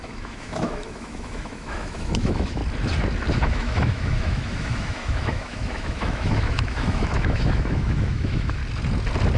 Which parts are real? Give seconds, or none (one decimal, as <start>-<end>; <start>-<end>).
2.6-3.3; 8.6-9.4